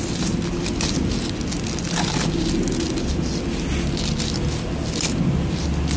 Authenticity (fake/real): real